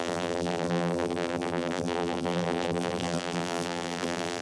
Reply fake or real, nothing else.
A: fake